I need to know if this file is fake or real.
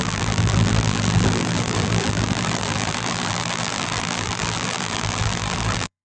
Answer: fake